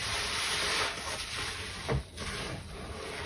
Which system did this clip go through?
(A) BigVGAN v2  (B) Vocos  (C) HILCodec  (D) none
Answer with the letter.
D